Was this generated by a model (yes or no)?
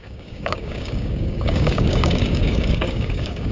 yes